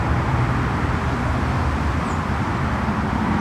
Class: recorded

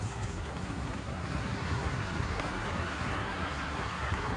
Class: remade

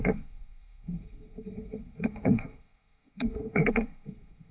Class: remade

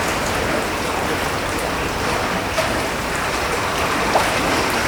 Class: recorded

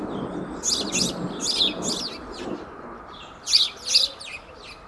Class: recorded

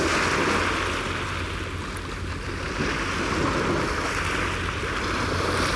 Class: recorded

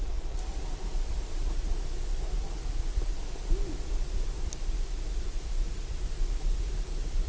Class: remade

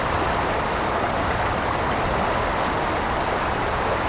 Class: recorded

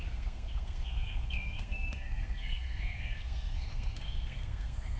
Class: remade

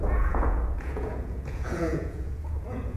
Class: remade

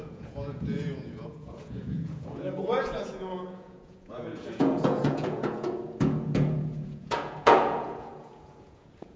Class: remade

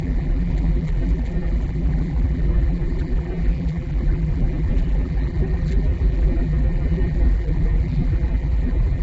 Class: remade